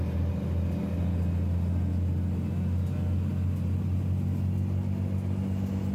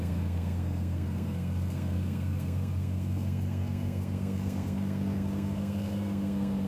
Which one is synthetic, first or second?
second